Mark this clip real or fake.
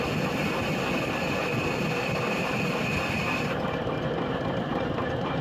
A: real